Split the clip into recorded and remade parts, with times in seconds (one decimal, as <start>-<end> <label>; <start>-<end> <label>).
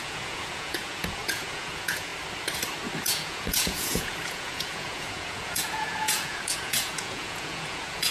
0.0-2.1 remade; 2.1-3.0 recorded; 3.0-8.1 remade